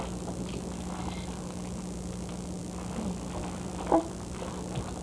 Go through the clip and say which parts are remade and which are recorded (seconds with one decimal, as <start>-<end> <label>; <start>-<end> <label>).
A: 0.0-5.0 recorded